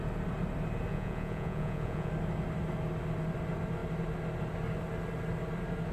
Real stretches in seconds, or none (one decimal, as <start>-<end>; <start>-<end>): 0.0-0.9; 2.1-5.9